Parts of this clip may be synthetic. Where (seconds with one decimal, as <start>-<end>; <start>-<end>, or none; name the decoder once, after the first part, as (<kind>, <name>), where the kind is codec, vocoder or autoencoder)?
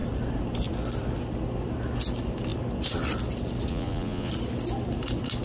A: 3.7-4.3 (vocoder, Vocos)